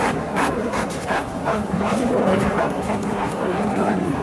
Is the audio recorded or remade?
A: remade